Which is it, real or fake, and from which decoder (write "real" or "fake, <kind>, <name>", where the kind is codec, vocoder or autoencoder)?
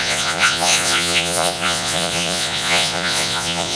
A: fake, vocoder, Vocos